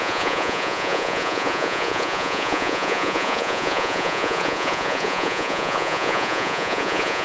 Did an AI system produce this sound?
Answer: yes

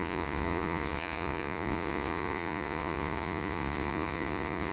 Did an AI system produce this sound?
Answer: yes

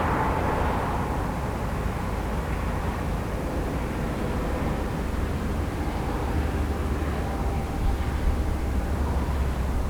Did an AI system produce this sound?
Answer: no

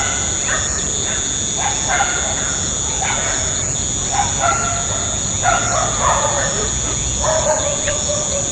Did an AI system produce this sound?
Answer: no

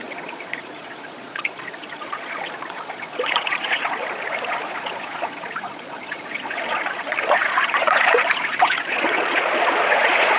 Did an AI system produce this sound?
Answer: yes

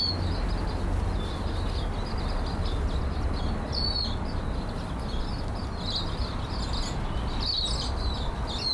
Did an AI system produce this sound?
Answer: no